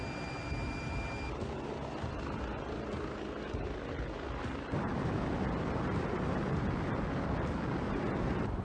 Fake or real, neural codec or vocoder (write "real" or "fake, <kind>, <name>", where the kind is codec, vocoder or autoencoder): real